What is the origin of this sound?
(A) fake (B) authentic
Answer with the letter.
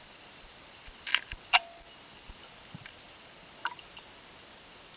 B